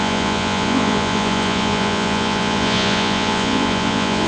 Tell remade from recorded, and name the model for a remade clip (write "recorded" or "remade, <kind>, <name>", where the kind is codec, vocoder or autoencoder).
remade, vocoder, Vocos